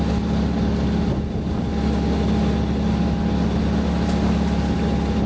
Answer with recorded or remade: recorded